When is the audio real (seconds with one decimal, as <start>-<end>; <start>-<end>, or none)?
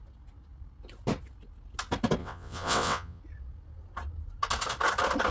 0.0-2.2; 3.2-5.3